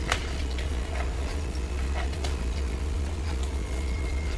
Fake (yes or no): yes